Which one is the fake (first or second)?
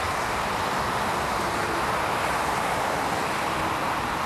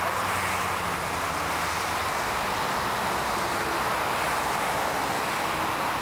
first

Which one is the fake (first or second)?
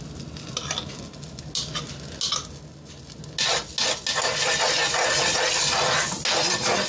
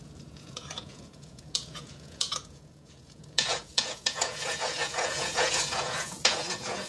second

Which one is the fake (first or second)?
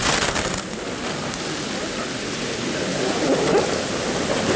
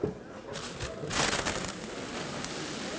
first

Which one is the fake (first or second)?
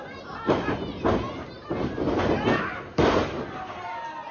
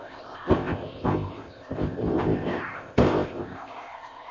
second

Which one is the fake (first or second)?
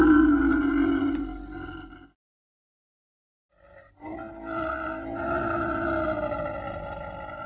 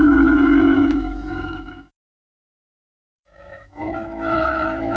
second